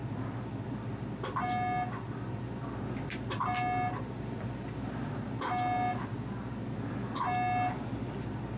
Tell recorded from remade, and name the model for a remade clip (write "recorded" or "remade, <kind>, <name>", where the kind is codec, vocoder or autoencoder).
recorded